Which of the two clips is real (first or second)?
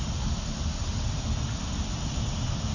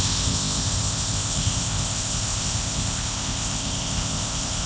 first